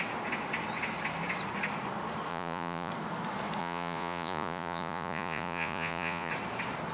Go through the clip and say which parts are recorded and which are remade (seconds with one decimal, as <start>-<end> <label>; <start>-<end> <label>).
0.0-2.3 recorded; 2.3-2.9 remade; 2.9-3.6 recorded; 3.6-6.3 remade; 6.3-6.9 recorded